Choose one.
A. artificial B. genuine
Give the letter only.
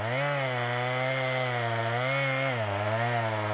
B